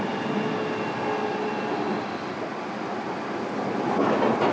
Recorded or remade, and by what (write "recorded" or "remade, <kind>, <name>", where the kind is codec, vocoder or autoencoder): recorded